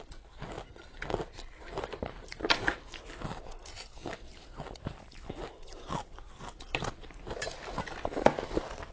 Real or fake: real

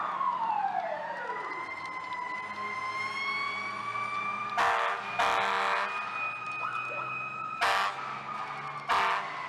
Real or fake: real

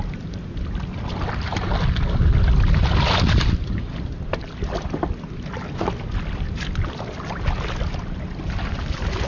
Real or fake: real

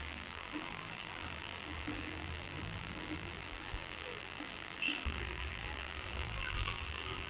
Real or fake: fake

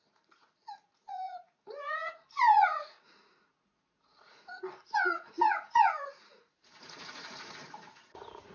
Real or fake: fake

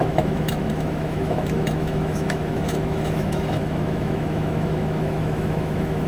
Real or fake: fake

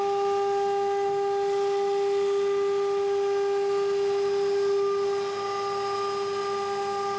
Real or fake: real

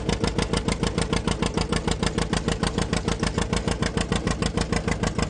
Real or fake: real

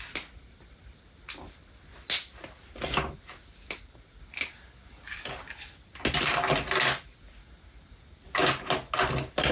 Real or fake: real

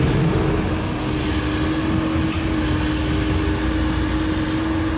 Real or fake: real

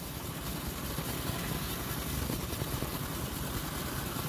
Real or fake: fake